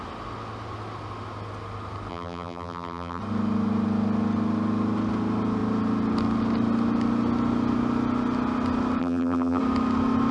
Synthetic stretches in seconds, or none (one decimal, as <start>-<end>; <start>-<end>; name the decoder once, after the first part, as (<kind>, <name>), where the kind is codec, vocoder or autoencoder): 2.1-3.2 (vocoder, BigVGAN v2); 9.0-9.6

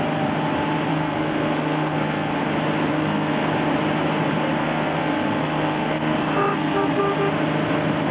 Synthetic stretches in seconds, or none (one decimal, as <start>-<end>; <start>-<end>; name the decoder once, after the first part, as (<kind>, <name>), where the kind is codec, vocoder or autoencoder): 0.9-2.4 (codec, SNAC); 2.9-3.5; 4.6-7.0

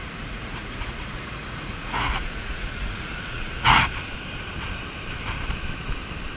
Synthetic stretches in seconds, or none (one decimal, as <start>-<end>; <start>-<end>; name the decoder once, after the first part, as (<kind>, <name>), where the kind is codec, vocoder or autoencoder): 0.0-3.8 (vocoder, Vocos)

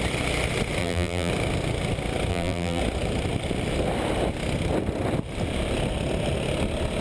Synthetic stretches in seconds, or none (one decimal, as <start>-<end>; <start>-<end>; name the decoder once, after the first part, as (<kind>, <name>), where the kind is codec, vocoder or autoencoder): 0.8-1.3 (vocoder, BigVGAN v2); 2.3-2.8

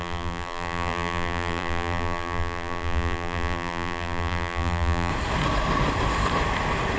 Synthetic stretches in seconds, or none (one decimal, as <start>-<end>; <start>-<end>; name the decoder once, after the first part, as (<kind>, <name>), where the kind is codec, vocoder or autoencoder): 0.0-5.1 (vocoder, BigVGAN v2)

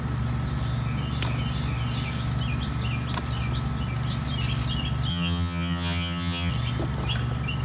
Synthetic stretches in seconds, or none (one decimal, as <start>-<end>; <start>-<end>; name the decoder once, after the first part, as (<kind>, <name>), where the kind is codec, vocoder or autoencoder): 5.1-6.5 (vocoder, HiFi-GAN)